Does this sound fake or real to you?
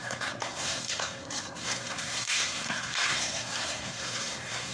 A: fake